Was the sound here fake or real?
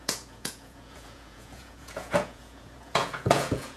fake